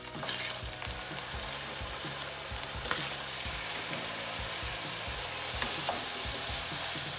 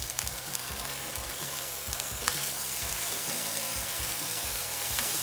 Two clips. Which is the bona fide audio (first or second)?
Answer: first